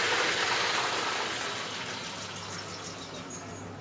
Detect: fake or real real